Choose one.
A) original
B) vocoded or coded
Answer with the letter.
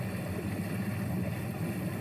A